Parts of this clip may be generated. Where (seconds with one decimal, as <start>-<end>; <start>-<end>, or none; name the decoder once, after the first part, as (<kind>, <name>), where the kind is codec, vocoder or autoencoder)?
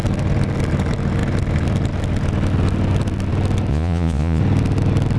3.7-4.4 (vocoder, Vocos)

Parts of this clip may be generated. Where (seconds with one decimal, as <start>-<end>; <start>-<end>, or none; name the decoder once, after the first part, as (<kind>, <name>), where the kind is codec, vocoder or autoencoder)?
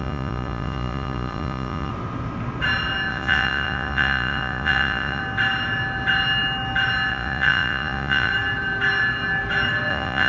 0.0-1.9 (vocoder, Vocos); 3.1-5.2; 7.1-8.3; 9.9-10.3